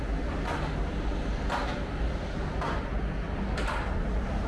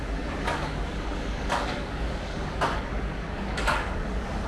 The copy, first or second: second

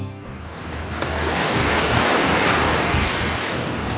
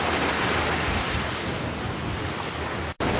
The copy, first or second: first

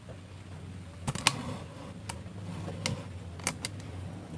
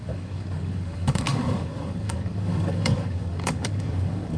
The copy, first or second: second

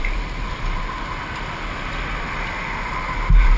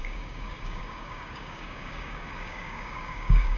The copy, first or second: second